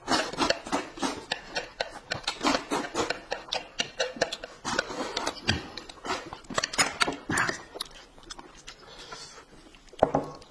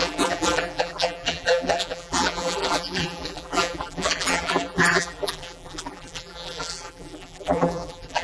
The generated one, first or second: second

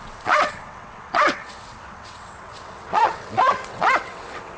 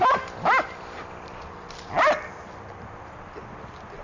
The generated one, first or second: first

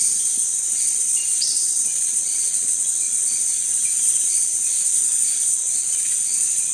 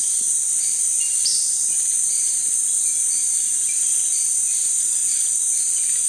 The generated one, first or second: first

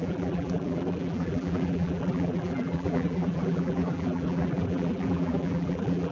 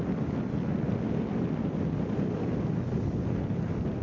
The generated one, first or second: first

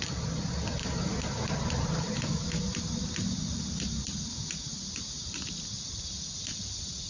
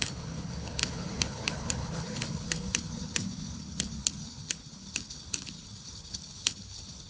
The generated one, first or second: second